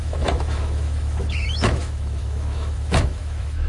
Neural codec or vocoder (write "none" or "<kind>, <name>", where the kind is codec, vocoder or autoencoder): autoencoder, DAC-VAE